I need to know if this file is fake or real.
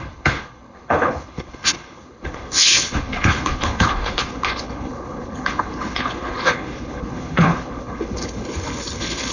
fake